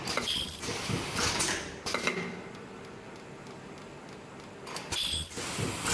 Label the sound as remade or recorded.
recorded